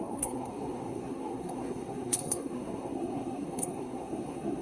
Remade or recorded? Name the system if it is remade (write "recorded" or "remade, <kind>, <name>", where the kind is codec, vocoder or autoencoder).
remade, codec, SNAC